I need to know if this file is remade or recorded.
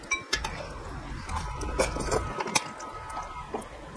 recorded